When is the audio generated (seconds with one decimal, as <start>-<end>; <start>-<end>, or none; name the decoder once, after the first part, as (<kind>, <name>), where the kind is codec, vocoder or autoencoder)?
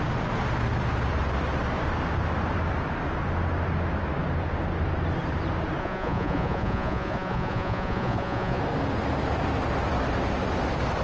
5.8-8.6 (vocoder, Vocos)